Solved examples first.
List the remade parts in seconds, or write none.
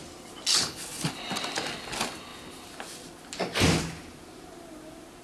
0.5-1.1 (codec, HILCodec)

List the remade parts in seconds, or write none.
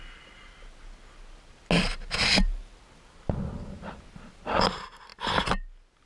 2.2-2.8 (vocoder, BigVGAN v2)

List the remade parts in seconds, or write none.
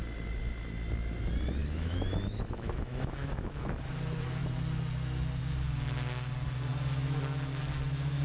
1.6-3.8 (autoencoder, DAC-VAE)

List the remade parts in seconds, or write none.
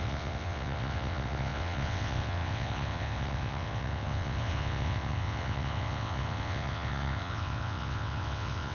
0.0-8.7 (vocoder, WaveNeXt)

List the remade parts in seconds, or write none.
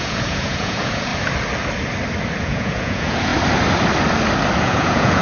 0.0-1.1 (vocoder, Vocos); 2.4-3.3; 4.6-5.2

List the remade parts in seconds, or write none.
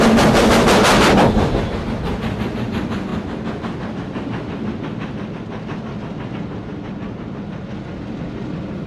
none